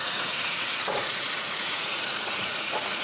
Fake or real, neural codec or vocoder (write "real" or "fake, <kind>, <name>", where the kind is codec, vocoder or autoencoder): fake, vocoder, Vocos